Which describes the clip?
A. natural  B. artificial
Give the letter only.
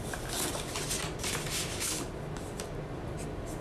A